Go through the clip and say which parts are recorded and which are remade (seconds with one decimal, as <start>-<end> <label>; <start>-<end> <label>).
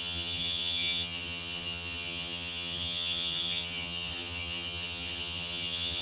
0.0-6.0 remade